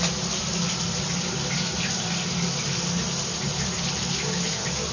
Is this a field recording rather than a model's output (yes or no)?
yes